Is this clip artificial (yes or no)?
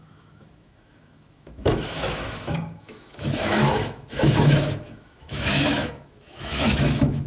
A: yes